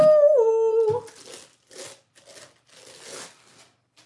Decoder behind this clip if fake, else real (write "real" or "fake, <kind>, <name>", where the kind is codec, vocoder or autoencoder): real